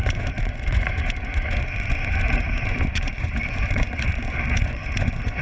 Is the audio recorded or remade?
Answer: remade